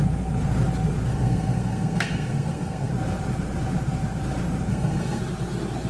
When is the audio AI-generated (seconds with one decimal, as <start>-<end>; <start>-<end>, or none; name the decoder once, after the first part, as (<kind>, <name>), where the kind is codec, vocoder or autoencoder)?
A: 1.1-2.9 (codec, SNAC); 4.7-5.2